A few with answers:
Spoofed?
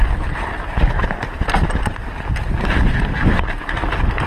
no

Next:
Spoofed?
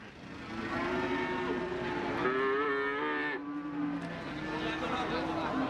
no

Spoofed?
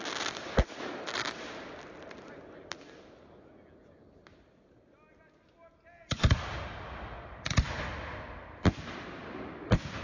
no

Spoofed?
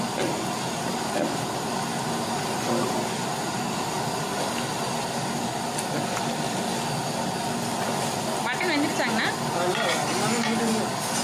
no